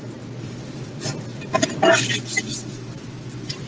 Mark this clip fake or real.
real